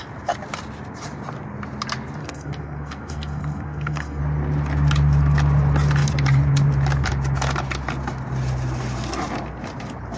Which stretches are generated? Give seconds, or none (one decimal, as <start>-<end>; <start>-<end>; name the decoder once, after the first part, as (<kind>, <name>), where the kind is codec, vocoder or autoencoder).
2.2-4.2 (codec, SNAC)